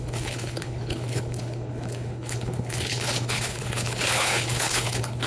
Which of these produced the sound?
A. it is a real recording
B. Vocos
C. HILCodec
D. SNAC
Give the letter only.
C